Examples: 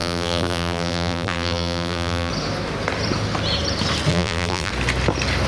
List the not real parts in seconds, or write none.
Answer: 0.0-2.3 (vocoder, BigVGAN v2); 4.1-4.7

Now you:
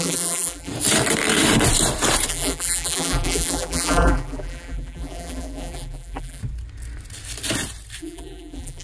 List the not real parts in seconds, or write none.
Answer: 0.0-0.7 (vocoder, BigVGAN v2); 2.3-6.4; 8.0-8.8

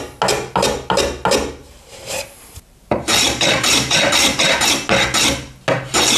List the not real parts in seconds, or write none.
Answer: 1.6-4.7 (vocoder, BigVGAN v2)

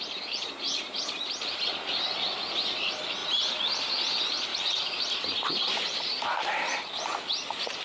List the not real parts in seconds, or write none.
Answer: 3.2-3.9 (vocoder, BigVGAN v2); 4.5-5.1

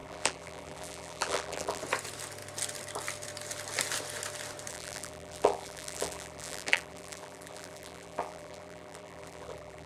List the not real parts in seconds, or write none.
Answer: 0.0-1.8 (vocoder, BigVGAN v2); 4.7-9.9

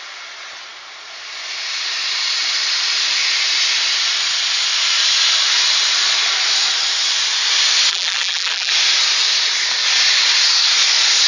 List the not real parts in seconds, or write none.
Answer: 7.9-8.7 (vocoder, BigVGAN v2)

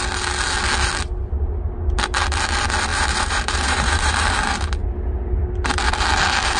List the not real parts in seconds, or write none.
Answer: 2.9-4.3 (vocoder, BigVGAN v2)

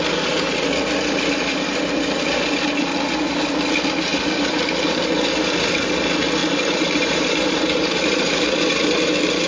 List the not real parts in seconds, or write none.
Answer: 6.4-8.4 (vocoder, BigVGAN v2)